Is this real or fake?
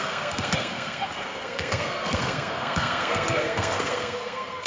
fake